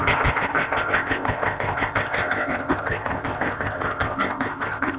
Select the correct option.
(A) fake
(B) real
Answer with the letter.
A